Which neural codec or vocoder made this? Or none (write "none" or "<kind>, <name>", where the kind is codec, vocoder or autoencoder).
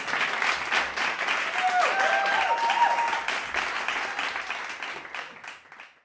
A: none